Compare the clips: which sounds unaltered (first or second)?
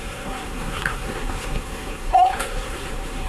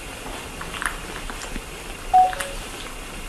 second